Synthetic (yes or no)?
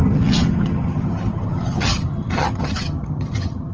yes